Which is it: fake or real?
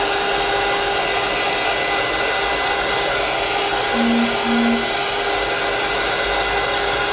real